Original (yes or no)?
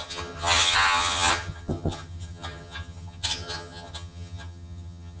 no